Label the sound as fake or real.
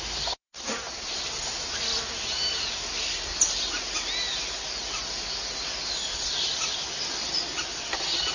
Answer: real